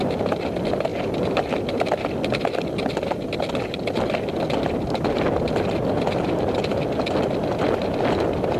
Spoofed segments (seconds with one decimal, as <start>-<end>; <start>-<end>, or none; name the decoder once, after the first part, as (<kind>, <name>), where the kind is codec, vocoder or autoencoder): none